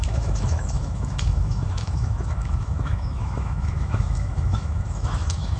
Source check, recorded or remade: remade